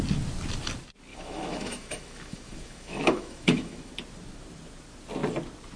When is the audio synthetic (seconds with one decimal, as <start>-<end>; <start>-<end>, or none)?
1.1-3.9